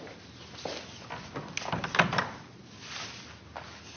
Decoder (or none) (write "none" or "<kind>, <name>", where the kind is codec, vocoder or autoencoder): none